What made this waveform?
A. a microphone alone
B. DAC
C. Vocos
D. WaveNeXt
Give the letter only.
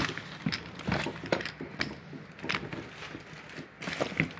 A